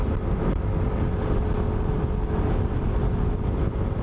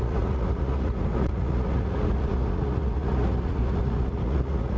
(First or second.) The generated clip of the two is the second